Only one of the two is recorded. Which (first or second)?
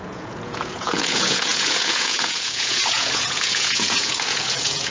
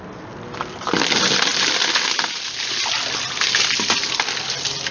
second